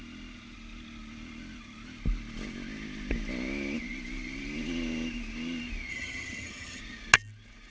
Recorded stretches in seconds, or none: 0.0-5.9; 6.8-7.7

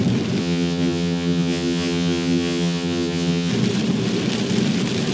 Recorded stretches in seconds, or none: 0.0-0.4; 3.5-5.1

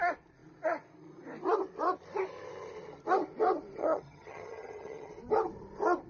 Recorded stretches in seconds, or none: 0.0-3.8; 5.1-6.1